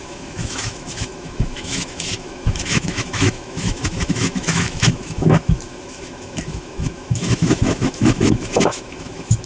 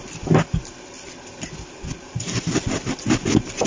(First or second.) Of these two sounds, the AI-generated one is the first